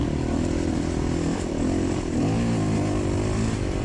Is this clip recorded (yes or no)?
yes